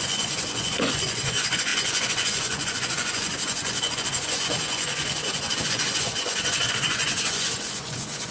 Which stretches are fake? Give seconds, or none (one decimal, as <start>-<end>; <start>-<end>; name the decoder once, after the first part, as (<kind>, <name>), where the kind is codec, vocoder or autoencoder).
0.0-8.3 (vocoder, Vocos)